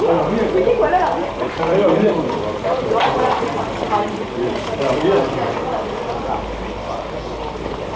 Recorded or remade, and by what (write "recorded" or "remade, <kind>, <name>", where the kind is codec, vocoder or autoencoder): recorded